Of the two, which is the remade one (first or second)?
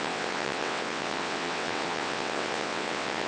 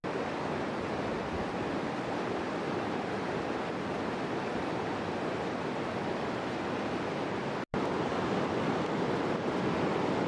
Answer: first